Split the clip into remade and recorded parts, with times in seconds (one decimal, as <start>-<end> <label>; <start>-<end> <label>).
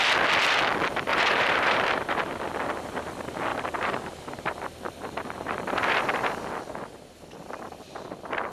0.0-1.1 recorded; 1.1-2.3 remade; 2.3-3.5 recorded; 3.5-6.5 remade; 6.5-8.5 recorded